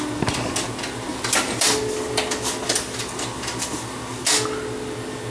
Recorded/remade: recorded